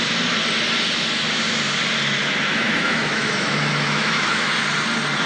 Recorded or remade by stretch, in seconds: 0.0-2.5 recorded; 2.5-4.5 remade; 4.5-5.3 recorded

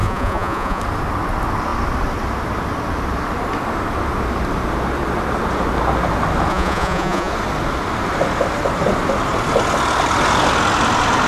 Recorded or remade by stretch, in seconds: 0.0-0.8 remade; 0.8-6.5 recorded; 6.5-7.3 remade; 7.3-11.3 recorded

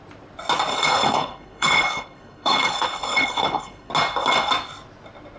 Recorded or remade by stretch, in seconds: 0.0-0.7 recorded; 0.7-3.9 remade; 3.9-5.4 recorded

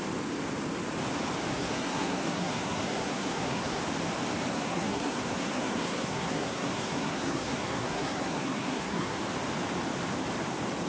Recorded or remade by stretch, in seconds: 0.0-1.5 recorded; 1.5-3.8 remade; 3.8-4.5 recorded; 4.5-9.2 remade; 9.2-10.9 recorded

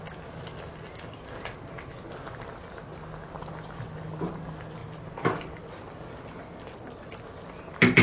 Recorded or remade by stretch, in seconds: 0.0-8.0 recorded

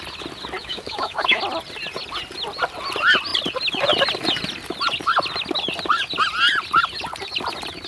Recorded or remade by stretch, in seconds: 0.0-0.6 recorded; 0.6-1.4 remade; 1.4-7.9 recorded

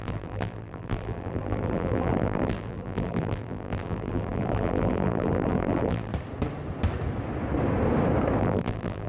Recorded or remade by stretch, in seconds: 0.0-6.1 remade; 6.1-8.4 recorded; 8.4-9.1 remade